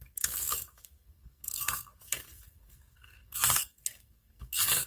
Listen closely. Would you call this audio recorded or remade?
remade